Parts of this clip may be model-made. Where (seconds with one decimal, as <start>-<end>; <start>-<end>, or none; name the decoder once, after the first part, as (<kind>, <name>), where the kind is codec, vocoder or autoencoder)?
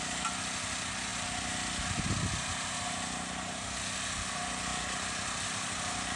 none